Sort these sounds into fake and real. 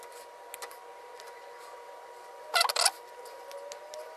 real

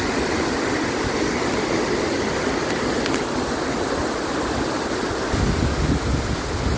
real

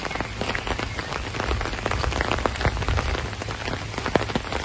real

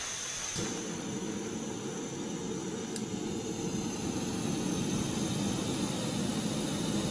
real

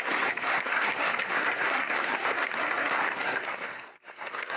fake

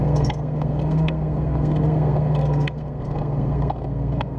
fake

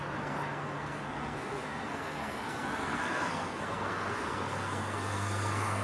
fake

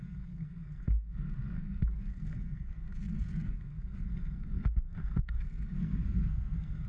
fake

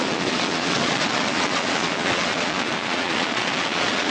fake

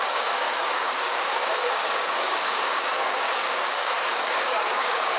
fake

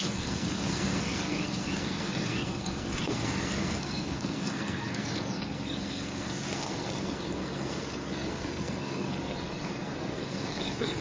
fake